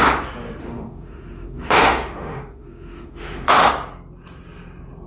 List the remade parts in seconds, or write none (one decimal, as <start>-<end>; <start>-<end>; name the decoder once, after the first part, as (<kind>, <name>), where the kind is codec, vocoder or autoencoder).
0.6-3.7 (autoencoder, DAC-VAE)